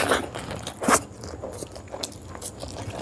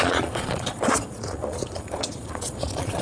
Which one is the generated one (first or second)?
second